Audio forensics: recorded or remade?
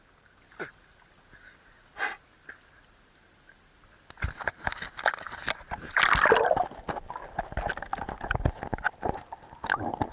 recorded